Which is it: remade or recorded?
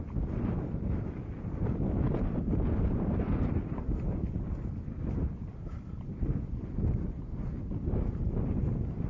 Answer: recorded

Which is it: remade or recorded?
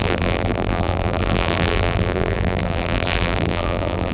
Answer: remade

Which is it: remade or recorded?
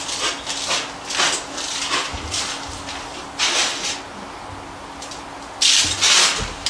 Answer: recorded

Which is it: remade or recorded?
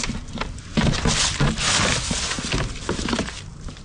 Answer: recorded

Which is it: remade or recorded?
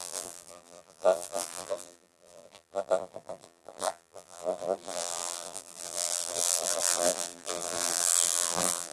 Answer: remade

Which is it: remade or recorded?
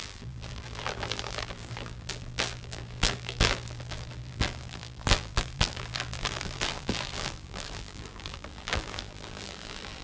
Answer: remade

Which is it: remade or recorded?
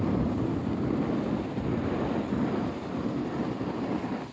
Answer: recorded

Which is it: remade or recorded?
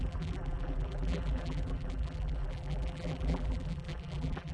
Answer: remade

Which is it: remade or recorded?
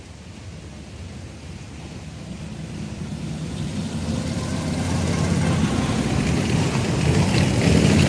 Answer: remade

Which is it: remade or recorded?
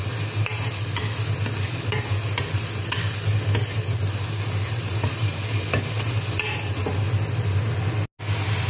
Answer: recorded